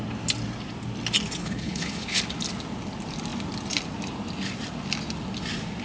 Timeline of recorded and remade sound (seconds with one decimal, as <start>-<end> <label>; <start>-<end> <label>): 0.0-1.4 recorded; 1.4-2.2 remade; 2.2-5.8 recorded